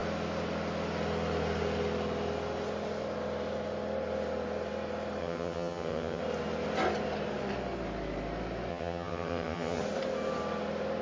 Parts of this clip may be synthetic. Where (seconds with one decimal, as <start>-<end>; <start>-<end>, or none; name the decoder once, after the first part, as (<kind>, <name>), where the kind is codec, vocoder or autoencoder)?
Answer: 5.2-6.2 (vocoder, HiFi-GAN); 8.7-9.8